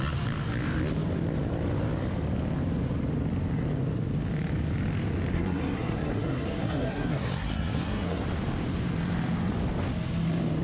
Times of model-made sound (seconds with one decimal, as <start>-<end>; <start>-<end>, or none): 5.3-8.2